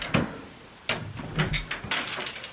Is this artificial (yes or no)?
no